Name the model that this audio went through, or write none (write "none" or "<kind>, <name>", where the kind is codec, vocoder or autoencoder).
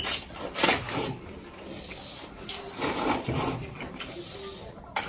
none